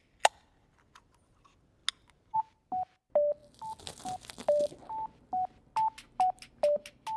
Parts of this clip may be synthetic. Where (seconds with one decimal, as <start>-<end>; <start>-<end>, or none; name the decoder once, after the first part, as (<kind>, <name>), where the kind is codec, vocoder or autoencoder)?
3.4-4.7 (vocoder, BigVGAN v2)